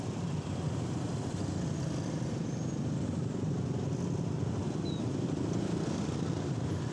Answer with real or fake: real